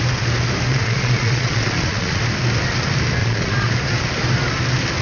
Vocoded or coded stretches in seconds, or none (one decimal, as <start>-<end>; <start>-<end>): 0.7-2.2; 3.2-3.7